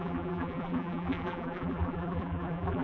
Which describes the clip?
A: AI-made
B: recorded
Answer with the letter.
A